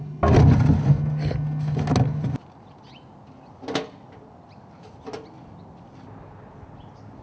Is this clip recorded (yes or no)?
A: yes